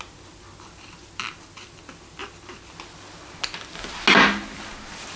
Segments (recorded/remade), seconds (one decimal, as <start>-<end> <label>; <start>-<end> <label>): 0.0-5.2 recorded